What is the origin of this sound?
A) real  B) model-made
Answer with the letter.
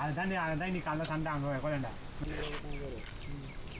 A